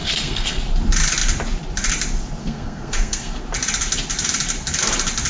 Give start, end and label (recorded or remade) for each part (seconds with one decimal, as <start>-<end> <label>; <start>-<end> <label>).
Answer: 0.0-0.6 remade; 0.6-2.4 recorded; 2.4-3.4 remade; 3.4-5.3 recorded